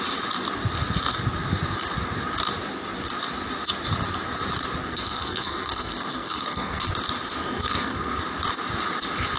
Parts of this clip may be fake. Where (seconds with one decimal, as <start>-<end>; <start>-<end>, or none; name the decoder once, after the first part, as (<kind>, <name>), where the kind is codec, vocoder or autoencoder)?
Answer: 4.8-6.9 (codec, SNAC); 7.4-8.2